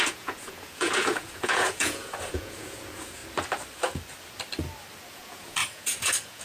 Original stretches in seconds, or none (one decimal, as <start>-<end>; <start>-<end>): 3.2-5.1